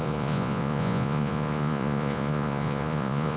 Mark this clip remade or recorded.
remade